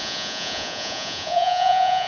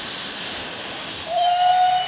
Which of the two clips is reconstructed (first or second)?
first